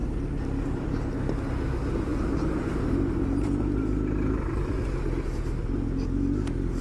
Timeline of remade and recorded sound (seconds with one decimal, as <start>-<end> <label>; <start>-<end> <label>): 0.0-6.8 recorded